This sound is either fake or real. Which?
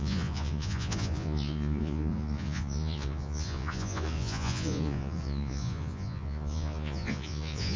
fake